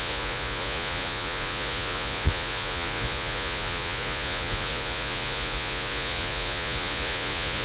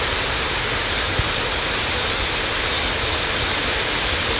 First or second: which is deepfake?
first